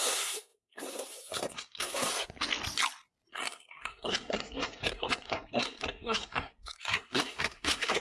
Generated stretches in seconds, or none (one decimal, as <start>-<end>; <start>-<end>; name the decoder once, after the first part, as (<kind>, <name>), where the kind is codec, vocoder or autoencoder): 0.0-2.1 (codec, SNAC); 3.3-8.0